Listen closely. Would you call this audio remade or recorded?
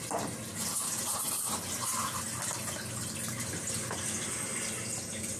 recorded